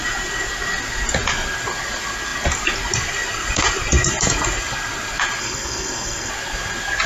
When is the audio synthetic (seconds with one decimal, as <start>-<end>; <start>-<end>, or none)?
5.4-6.3